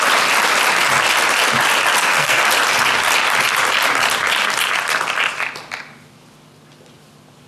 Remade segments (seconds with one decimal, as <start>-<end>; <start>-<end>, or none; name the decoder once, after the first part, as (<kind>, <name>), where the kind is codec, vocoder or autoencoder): 2.0-2.5 (codec, SNAC)